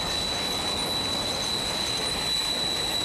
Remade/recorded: recorded